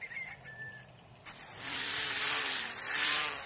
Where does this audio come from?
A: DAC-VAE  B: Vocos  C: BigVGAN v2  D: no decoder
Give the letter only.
D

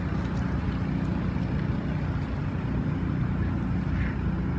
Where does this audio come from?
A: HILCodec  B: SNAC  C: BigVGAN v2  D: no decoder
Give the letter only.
D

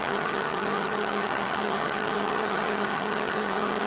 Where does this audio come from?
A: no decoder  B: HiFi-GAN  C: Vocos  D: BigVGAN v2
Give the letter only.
B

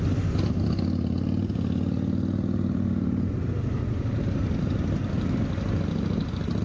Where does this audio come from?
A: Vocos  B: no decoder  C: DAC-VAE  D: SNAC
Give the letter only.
B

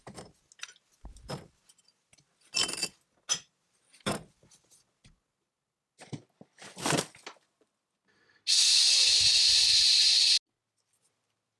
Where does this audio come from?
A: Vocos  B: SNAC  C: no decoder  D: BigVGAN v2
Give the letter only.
C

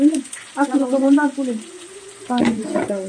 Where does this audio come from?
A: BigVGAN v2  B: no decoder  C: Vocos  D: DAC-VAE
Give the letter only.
C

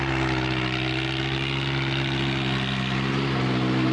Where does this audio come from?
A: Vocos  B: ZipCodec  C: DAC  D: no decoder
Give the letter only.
D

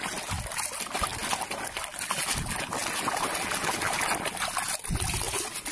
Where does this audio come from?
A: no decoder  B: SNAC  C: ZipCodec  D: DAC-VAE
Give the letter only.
A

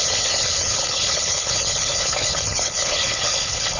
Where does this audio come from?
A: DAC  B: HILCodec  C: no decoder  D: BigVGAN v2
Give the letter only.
B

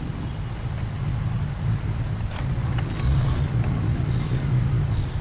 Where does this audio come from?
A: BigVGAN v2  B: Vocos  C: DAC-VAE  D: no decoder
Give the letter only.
D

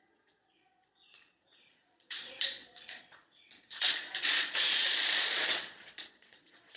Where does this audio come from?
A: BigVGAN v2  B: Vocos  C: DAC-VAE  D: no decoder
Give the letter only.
B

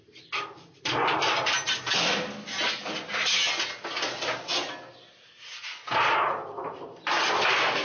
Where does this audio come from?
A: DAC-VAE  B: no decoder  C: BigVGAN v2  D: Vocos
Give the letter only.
B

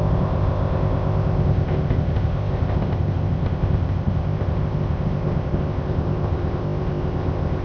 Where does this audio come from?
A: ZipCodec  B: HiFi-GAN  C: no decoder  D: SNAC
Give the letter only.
A